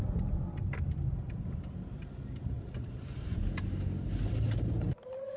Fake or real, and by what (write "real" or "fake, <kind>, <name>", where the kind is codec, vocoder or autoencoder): real